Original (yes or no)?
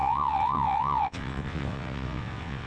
no